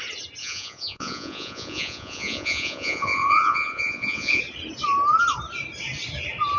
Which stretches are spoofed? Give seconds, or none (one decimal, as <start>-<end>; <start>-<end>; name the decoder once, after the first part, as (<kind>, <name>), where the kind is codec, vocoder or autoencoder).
0.4-4.4 (vocoder, Vocos)